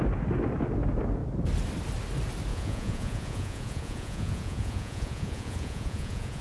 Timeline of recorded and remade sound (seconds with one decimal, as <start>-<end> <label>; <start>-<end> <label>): 0.0-2.5 recorded; 2.5-6.4 remade